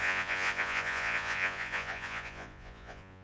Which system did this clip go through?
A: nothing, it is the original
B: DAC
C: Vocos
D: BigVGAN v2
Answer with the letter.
C